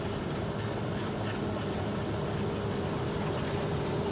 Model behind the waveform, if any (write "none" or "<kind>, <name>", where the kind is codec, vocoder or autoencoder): none